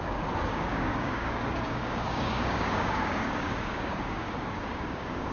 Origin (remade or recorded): remade